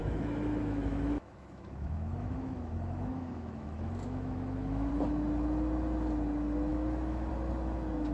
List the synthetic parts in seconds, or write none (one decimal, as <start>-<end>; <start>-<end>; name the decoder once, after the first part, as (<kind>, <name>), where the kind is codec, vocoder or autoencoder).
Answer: 0.0-4.9 (autoencoder, DAC-VAE); 6.7-7.3

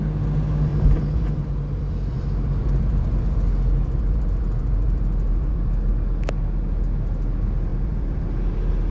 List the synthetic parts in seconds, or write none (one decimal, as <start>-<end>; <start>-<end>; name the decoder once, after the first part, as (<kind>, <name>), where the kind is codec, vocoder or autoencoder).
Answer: 0.7-5.9 (vocoder, BigVGAN v2); 7.7-8.2

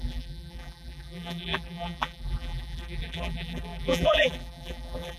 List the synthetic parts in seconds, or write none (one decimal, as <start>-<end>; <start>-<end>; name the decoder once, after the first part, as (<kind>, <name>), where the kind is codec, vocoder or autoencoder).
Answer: 0.0-5.2 (vocoder, BigVGAN v2)

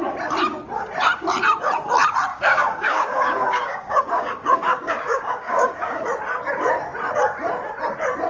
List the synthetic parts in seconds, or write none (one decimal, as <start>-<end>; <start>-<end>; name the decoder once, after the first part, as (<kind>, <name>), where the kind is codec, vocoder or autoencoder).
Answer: 2.3-6.0 (codec, DAC)

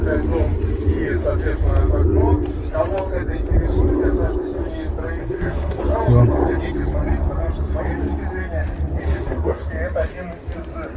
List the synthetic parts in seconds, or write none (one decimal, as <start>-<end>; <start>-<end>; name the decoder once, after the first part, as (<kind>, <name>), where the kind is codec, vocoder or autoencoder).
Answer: 5.2-5.8 (codec, SNAC); 9.0-9.7